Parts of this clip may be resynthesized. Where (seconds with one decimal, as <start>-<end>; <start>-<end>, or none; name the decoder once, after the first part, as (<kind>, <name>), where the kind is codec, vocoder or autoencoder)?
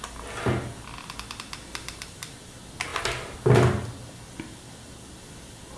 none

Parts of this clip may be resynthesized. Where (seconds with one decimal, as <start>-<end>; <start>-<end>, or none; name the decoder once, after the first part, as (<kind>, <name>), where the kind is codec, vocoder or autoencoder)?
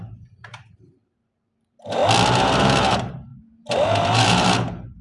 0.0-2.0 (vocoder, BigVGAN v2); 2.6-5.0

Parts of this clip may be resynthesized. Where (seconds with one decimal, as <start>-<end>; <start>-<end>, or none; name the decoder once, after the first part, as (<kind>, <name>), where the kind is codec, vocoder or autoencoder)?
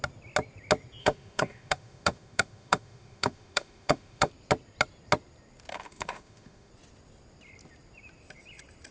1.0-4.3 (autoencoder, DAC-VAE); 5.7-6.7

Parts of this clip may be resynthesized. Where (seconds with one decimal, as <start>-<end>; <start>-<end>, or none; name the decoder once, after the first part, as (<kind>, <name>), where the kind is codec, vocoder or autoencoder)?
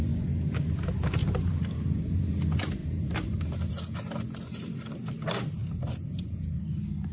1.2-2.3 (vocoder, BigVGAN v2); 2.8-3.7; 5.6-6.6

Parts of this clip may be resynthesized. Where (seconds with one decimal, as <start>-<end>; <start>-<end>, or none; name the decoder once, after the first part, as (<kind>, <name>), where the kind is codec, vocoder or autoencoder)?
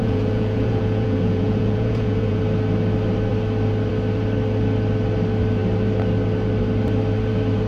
0.0-2.4 (vocoder, Vocos)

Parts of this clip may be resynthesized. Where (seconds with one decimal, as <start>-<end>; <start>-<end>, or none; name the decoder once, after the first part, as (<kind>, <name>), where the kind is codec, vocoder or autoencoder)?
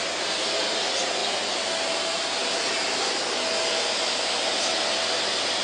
none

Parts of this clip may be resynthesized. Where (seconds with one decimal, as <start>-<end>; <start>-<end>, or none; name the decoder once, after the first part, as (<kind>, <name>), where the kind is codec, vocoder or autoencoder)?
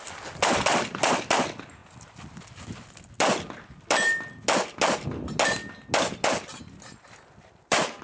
none